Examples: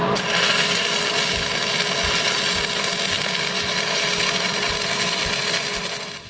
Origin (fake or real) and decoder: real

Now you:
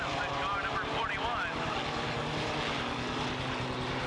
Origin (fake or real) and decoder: real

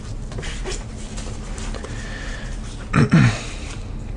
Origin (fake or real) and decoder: real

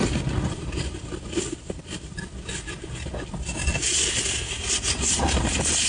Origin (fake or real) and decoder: real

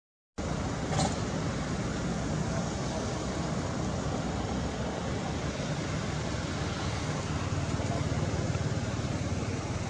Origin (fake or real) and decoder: real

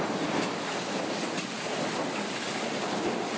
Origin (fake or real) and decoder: real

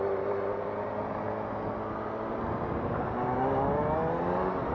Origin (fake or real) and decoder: real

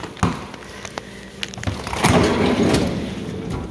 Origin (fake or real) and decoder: real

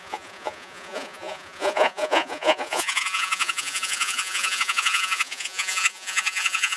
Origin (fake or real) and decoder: fake, vocoder, Vocos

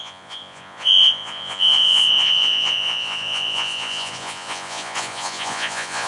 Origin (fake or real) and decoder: fake, vocoder, Vocos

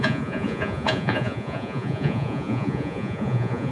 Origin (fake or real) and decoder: fake, vocoder, Vocos